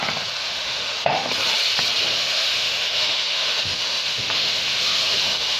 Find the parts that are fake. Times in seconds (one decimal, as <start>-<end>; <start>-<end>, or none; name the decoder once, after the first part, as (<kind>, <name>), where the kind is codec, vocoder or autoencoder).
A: 0.4-1.3 (autoencoder, DAC-VAE); 2.1-5.6